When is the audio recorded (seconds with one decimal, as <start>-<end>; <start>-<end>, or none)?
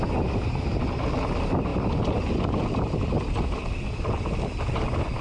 0.0-5.2